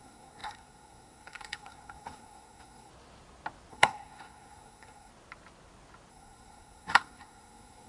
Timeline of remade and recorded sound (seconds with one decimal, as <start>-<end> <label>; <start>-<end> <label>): 0.0-2.9 remade; 2.9-3.7 recorded; 3.7-5.1 remade; 5.1-6.1 recorded; 6.1-7.9 remade